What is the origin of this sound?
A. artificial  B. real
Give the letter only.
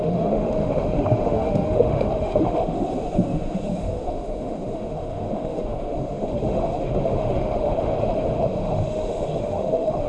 A